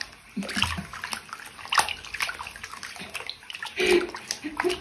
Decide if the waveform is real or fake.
real